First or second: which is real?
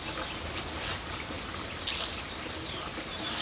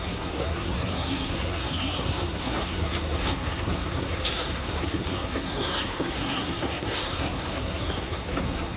first